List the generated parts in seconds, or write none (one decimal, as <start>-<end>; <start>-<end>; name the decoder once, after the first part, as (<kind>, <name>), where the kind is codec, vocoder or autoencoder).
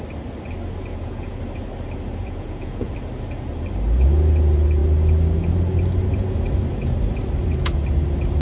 0.9-1.4 (vocoder, Vocos); 2.2-2.9